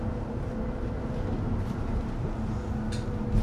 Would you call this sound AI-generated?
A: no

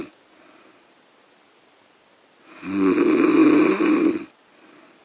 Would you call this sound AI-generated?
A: no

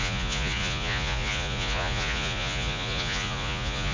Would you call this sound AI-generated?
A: yes